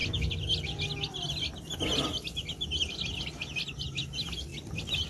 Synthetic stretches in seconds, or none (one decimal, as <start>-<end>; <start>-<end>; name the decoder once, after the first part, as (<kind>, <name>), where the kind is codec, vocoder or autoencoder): none